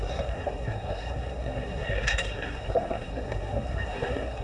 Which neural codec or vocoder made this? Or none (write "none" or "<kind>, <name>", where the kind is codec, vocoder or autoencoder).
codec, SNAC